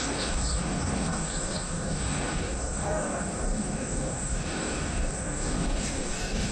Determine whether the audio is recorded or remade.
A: remade